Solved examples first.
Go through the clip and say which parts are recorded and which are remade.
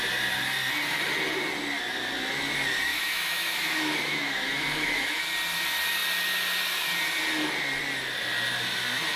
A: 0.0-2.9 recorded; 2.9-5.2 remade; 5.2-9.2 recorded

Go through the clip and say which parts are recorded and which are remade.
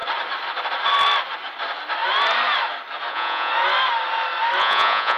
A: 0.0-3.1 recorded; 3.1-3.5 remade; 3.5-4.6 recorded; 4.6-5.2 remade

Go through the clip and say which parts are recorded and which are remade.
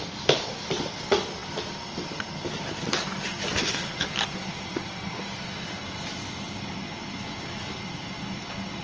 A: 0.0-8.8 recorded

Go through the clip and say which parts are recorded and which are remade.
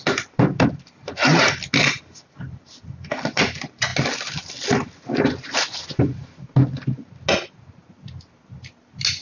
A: 0.0-9.2 recorded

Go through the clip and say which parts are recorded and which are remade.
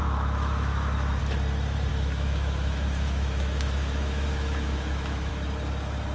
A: 0.0-1.2 remade; 1.2-1.9 recorded; 1.9-5.3 remade; 5.3-6.1 recorded